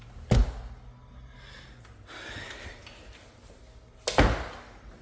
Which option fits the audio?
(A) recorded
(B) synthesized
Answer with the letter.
A